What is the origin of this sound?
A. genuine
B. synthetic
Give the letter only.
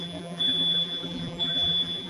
B